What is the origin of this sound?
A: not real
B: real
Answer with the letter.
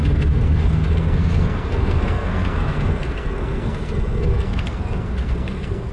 A